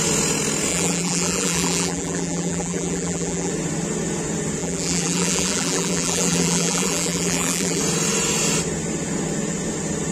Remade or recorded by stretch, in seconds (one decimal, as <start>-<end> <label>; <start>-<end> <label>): 0.0-0.7 recorded; 0.7-3.5 remade; 3.5-4.6 recorded; 4.6-7.8 remade; 7.8-10.1 recorded